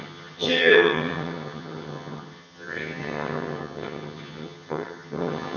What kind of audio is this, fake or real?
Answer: fake